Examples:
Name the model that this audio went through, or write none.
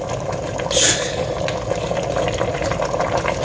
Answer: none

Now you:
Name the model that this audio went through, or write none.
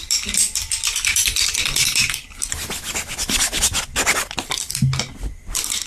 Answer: none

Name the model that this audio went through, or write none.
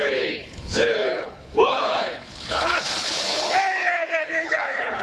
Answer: codec, HILCodec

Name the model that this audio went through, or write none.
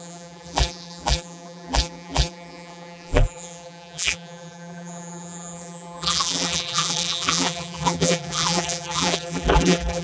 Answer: vocoder, BigVGAN v2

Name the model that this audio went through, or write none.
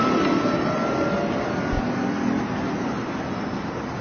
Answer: none